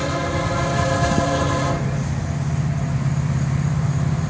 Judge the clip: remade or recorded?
recorded